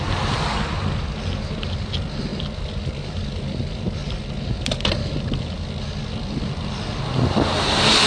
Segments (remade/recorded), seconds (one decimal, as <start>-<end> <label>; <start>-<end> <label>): 0.0-8.1 recorded